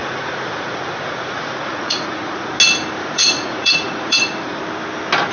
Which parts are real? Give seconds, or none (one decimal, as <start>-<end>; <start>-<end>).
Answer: 2.5-3.0; 4.6-5.3